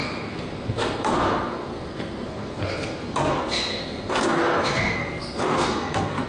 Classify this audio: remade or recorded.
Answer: remade